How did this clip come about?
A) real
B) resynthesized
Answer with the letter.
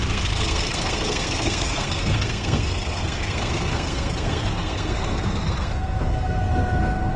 B